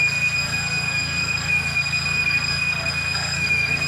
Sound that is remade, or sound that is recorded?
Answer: remade